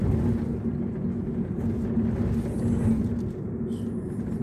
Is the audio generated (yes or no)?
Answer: no